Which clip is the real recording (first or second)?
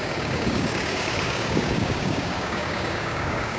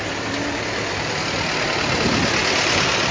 second